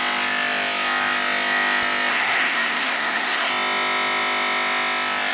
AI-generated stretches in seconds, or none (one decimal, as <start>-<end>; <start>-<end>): 2.1-3.5